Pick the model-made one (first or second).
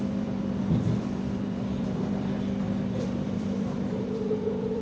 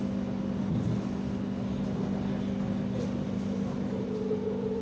first